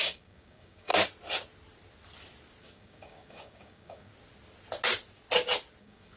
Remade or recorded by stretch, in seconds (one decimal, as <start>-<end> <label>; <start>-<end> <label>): 0.0-0.9 remade; 0.9-2.6 recorded; 2.6-4.1 remade; 4.1-5.8 recorded; 5.8-6.2 remade